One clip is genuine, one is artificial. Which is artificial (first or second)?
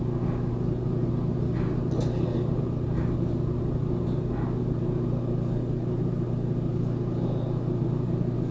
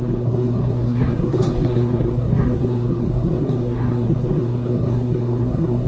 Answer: second